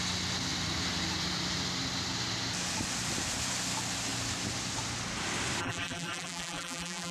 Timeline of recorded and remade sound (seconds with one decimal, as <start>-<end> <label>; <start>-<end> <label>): 0.0-5.6 recorded; 5.6-7.1 remade